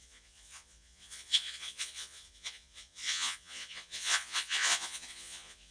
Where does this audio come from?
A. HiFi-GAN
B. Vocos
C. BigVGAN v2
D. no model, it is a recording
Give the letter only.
B